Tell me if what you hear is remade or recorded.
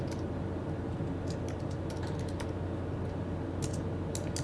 recorded